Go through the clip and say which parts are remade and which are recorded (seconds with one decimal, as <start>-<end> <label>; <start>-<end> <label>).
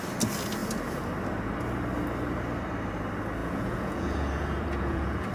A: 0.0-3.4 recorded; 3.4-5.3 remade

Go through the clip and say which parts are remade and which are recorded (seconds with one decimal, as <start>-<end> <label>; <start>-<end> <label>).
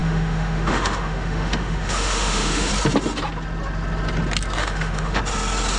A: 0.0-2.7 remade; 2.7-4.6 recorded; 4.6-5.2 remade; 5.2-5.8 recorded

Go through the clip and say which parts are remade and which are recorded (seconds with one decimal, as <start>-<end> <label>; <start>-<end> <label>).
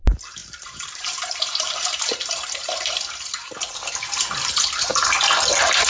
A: 0.0-0.4 recorded; 0.4-2.5 remade; 2.5-5.9 recorded